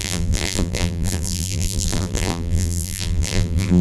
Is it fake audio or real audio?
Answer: fake